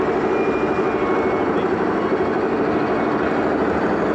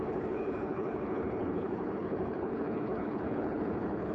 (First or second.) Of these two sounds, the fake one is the second